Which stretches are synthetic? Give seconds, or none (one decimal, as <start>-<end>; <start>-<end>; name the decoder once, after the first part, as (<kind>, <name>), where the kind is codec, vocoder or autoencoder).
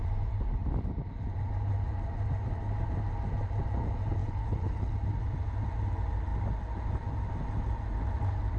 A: 4.2-4.9 (codec, HILCodec)